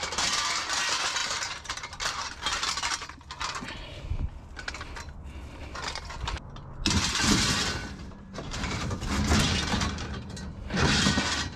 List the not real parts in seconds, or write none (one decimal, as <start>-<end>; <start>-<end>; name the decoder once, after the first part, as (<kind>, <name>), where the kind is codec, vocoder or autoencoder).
1.2-2.3 (vocoder, BigVGAN v2); 8.0-9.1